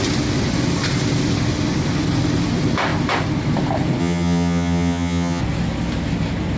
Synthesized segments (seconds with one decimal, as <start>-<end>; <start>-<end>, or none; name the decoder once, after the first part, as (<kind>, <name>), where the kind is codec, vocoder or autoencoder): 4.0-5.4 (vocoder, HiFi-GAN)